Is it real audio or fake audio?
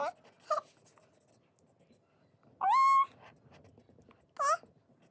real